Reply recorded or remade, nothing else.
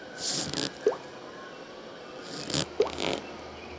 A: recorded